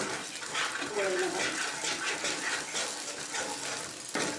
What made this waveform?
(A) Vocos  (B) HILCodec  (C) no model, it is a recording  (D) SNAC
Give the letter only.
C